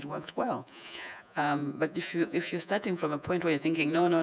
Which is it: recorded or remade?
remade